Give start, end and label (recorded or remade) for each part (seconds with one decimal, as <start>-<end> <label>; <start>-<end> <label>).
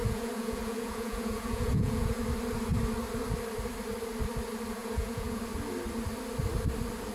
0.0-2.2 remade; 2.2-4.8 recorded; 4.8-5.4 remade; 5.4-7.1 recorded